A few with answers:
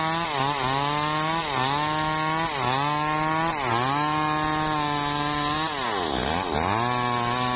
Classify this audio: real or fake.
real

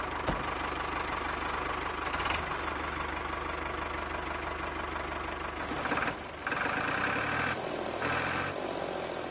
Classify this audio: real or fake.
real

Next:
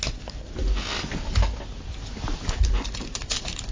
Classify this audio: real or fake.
real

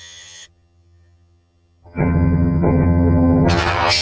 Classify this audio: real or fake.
fake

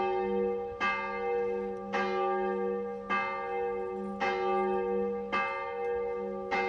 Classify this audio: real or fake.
real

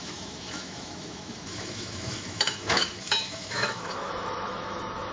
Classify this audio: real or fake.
fake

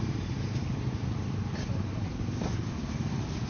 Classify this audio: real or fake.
real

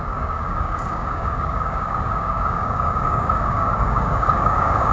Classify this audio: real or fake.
fake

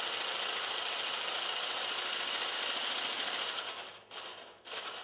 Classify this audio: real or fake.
real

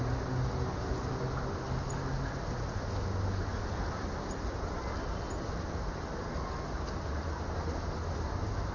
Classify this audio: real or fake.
real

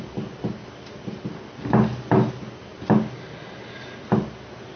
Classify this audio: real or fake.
real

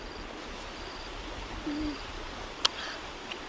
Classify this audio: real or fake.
real